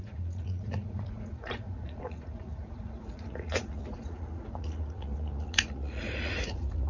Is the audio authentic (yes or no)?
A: no